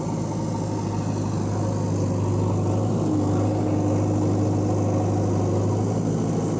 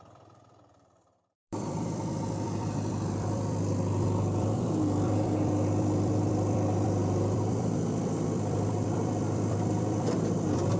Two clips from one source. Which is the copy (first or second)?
second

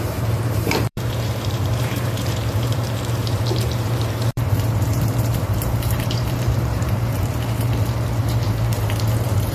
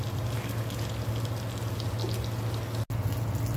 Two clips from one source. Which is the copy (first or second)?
first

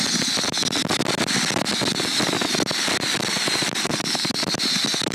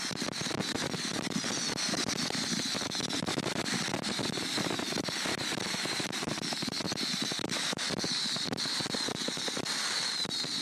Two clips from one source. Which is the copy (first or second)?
second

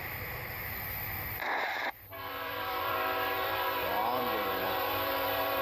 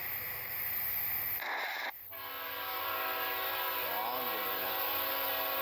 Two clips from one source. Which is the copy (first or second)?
first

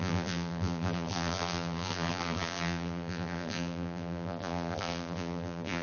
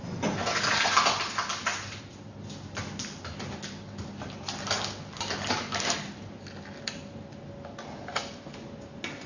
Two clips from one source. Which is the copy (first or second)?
first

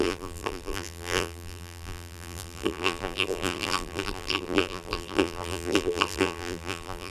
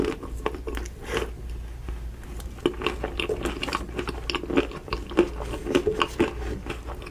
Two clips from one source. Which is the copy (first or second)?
first